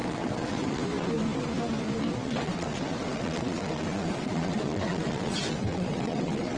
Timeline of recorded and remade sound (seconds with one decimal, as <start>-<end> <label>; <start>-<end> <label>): 0.0-0.8 remade; 0.8-2.2 recorded; 2.2-6.6 remade